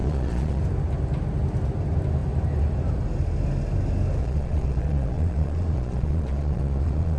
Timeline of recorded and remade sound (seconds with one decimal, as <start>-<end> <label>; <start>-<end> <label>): 0.0-0.6 remade; 0.6-4.2 recorded; 4.2-7.2 remade